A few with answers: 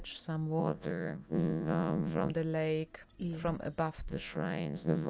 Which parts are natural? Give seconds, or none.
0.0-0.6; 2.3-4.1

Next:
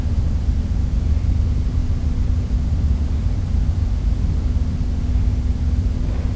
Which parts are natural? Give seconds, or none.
0.0-6.4

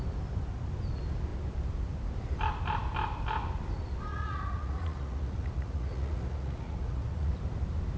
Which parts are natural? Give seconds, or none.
0.0-4.1; 7.3-8.0

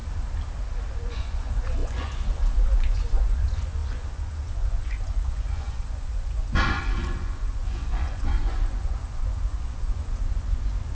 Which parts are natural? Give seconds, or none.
0.0-0.9

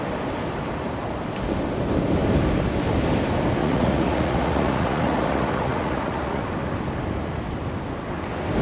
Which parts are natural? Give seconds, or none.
0.0-3.6; 6.4-8.6

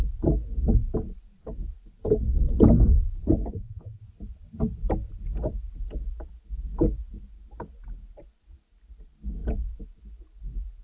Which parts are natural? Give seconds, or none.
0.0-3.5; 4.0-10.8